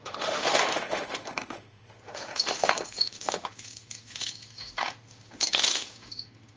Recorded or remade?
remade